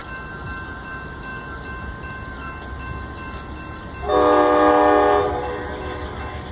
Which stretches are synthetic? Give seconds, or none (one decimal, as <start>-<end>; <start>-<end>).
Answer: none